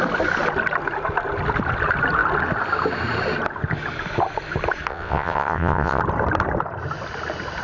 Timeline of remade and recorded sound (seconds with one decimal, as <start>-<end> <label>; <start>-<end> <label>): 0.0-4.9 recorded; 4.9-6.0 remade; 6.0-7.6 recorded